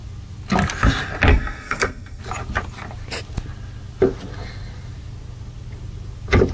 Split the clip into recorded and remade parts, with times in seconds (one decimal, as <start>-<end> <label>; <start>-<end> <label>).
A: 0.0-1.3 recorded; 1.3-2.2 remade; 2.2-6.5 recorded